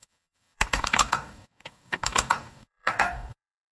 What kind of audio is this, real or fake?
fake